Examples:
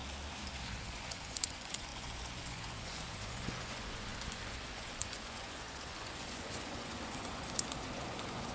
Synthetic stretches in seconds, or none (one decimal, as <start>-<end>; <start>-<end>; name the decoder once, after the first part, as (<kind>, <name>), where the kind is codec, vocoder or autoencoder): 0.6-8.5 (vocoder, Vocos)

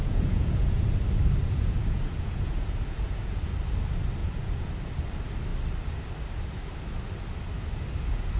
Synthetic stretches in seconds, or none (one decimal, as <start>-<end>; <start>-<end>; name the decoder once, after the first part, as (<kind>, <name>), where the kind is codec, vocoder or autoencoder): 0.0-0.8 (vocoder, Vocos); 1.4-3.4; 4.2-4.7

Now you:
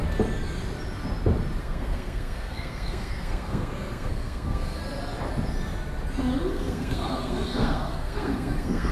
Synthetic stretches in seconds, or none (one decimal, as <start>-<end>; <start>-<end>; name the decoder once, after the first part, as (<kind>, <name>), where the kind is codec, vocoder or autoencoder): 1.6-4.8 (codec, SNAC); 6.5-8.9

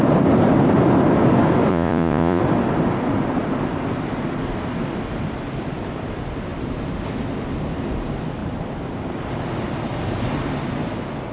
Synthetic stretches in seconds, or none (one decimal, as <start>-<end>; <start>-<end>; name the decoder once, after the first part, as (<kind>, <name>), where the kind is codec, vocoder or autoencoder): 1.7-2.4 (vocoder, Vocos)

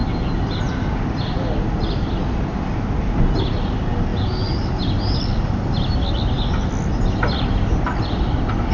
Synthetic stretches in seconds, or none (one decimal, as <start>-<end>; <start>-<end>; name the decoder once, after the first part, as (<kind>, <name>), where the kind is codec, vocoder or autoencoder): none